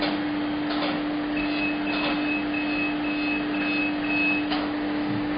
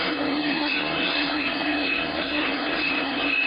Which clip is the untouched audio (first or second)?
first